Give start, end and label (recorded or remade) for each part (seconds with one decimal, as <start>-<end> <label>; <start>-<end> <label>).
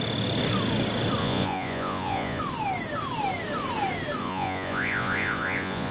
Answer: 0.0-1.2 recorded; 1.2-2.4 remade; 2.4-4.2 recorded; 4.2-5.9 remade